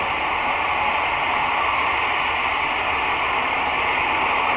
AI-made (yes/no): no